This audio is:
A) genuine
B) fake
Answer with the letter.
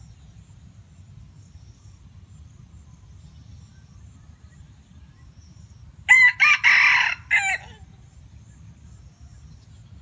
A